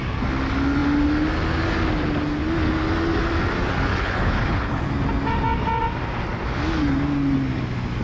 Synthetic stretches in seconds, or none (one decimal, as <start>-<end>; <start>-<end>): 3.9-4.8